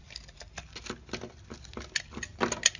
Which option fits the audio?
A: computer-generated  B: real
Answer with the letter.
B